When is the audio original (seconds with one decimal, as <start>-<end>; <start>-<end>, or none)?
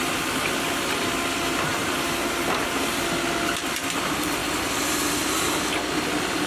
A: 0.0-6.5